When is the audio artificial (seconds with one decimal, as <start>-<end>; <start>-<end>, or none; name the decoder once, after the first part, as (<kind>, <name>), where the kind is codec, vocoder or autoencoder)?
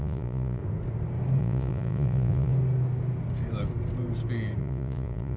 0.0-0.6 (vocoder, Vocos); 1.4-2.5; 4.6-5.4